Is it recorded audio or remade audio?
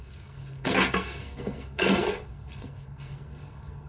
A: remade